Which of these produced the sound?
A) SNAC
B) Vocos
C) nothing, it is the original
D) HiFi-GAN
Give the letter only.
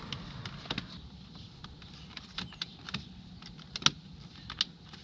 C